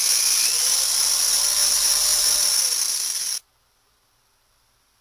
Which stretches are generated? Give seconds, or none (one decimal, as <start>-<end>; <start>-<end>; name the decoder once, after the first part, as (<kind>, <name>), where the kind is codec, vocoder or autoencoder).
none